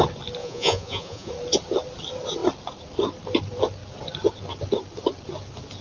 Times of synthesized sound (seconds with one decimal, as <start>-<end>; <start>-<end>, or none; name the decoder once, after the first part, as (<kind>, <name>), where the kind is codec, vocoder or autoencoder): 0.4-1.3 (vocoder, Vocos)